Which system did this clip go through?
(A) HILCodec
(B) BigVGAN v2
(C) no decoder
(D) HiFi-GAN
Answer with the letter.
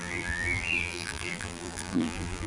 B